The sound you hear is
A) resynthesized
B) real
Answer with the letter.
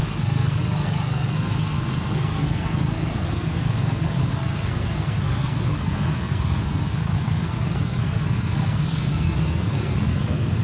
A